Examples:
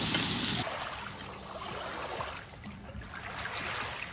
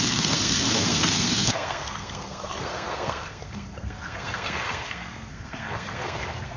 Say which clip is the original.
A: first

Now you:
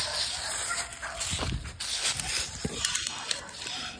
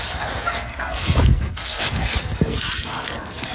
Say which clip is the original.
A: first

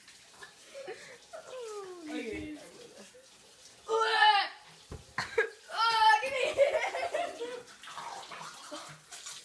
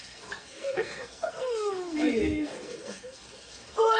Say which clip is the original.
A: first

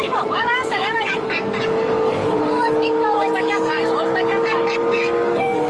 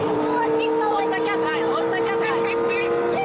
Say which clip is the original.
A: second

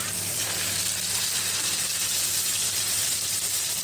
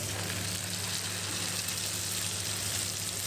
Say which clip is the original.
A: second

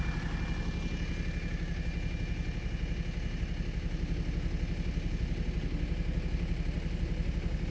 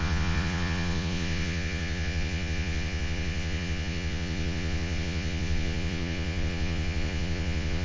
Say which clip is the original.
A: first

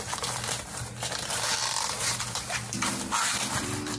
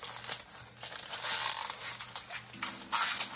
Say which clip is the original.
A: second